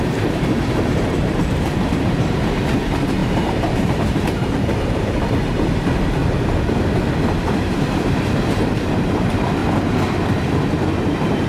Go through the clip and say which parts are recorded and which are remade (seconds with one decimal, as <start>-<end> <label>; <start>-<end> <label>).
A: 0.0-6.2 remade; 6.2-7.3 recorded; 7.3-9.6 remade; 9.6-11.0 recorded; 11.0-11.5 remade

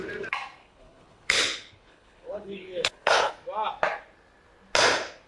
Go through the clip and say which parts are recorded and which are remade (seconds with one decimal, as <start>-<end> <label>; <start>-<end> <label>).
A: 0.0-0.6 recorded; 0.6-3.3 remade; 3.3-5.3 recorded

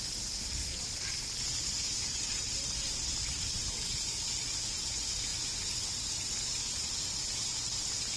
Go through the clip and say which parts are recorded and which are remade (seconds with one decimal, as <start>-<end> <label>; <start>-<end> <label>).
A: 0.0-0.6 recorded; 0.6-1.2 remade; 1.2-8.2 recorded

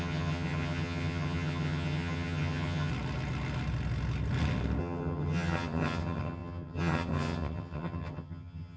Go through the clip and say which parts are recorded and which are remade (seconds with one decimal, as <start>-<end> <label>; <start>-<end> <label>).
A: 0.0-2.9 remade; 2.9-4.8 recorded; 4.8-8.8 remade